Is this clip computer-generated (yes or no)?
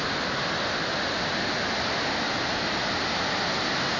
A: no